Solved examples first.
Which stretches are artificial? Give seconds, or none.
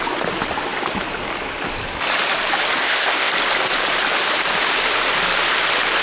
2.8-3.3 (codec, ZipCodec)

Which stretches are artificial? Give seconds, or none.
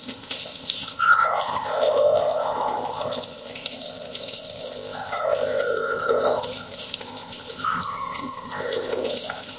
0.0-9.6 (codec, ZipCodec)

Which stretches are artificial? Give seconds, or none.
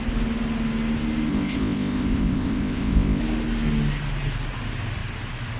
1.3-3.2 (codec, ZipCodec)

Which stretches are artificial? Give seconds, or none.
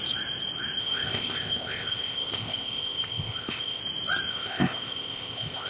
0.8-3.8 (codec, ZipCodec); 4.3-5.7